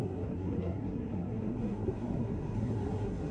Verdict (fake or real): fake